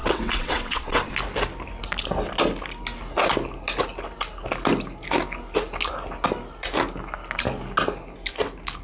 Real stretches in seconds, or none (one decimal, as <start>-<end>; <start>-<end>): 1.1-8.8